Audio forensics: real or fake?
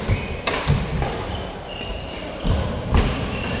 fake